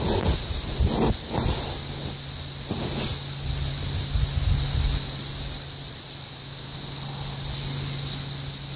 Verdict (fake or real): real